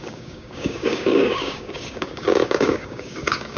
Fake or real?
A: fake